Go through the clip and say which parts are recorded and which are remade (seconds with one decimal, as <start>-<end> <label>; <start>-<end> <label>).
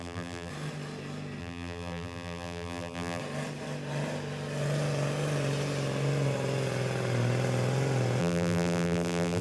0.0-0.5 remade; 0.5-1.4 recorded; 1.4-3.2 remade; 3.2-8.2 recorded; 8.2-9.4 remade